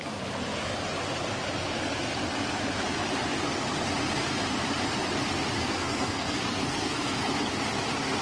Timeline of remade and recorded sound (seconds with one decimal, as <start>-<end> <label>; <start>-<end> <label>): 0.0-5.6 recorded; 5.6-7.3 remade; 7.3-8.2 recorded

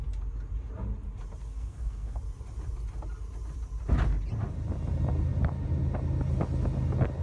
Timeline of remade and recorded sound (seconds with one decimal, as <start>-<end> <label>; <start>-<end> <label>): 0.0-1.4 recorded; 1.4-2.2 remade; 2.2-7.2 recorded

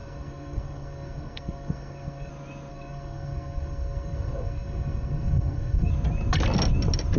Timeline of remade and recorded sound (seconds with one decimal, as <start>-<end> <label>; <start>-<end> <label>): 0.0-2.3 remade; 2.3-2.7 recorded; 2.7-5.9 remade; 5.9-7.2 recorded

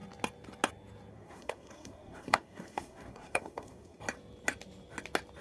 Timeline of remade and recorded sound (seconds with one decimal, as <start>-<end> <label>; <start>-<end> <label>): 0.0-1.1 recorded; 1.1-4.0 remade; 4.0-5.4 recorded